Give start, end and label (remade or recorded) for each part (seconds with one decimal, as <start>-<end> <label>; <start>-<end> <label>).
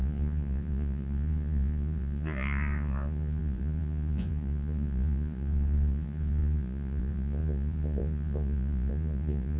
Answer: 0.0-9.6 remade